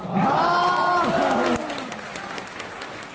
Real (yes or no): yes